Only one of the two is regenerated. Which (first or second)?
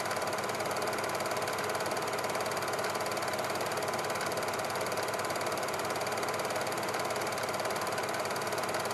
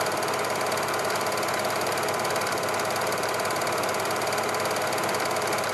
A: first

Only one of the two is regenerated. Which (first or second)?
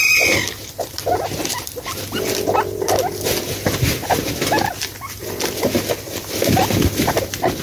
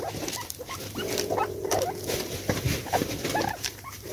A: second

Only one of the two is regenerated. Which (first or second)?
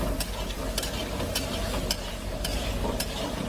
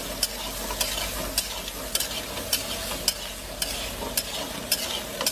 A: first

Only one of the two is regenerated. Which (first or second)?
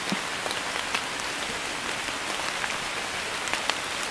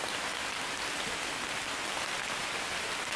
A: first